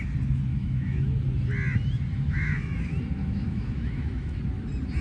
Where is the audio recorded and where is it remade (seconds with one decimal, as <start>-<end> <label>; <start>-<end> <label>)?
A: 0.0-0.5 recorded; 0.5-1.1 remade; 1.1-2.1 recorded; 2.1-2.8 remade; 2.8-3.2 recorded; 3.2-4.4 remade; 4.4-5.0 recorded